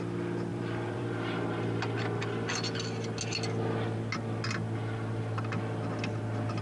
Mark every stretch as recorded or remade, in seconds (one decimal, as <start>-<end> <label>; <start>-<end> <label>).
0.0-0.5 recorded; 0.5-1.5 remade; 1.5-6.6 recorded